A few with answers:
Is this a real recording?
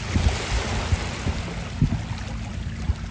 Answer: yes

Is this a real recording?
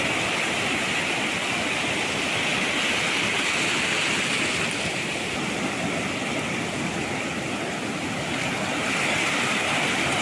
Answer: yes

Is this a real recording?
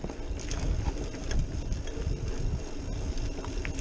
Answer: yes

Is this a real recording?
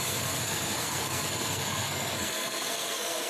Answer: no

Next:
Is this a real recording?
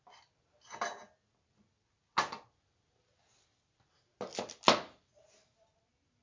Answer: yes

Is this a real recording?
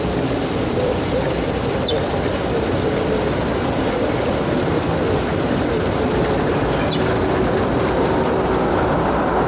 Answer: yes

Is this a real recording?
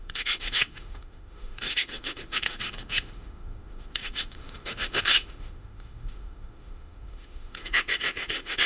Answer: no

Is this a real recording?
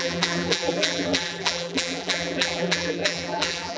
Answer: no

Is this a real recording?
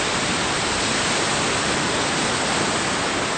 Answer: yes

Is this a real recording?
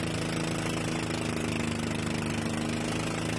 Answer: yes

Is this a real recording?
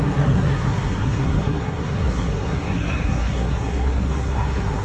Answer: no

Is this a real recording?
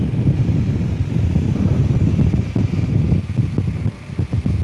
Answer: yes